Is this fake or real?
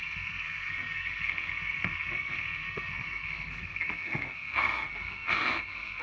fake